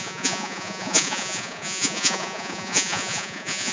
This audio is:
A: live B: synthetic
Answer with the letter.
B